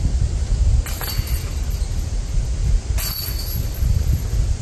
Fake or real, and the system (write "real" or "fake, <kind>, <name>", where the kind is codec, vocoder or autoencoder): real